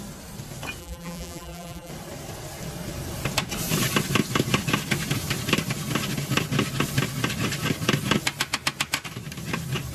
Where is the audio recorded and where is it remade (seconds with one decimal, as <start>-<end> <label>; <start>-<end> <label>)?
0.0-0.8 recorded; 0.8-1.9 remade; 1.9-9.9 recorded